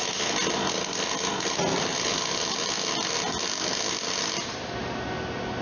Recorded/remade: recorded